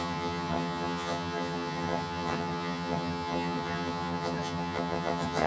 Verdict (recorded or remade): remade